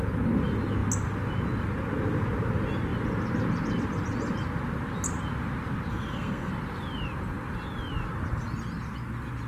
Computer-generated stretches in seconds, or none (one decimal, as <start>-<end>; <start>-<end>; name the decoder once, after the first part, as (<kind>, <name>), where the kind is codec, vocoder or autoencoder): 5.9-6.5 (codec, SNAC)